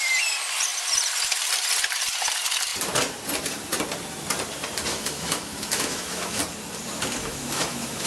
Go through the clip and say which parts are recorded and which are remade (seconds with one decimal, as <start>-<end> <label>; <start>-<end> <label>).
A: 0.0-4.9 recorded; 4.9-6.4 remade; 6.4-7.2 recorded; 7.2-8.1 remade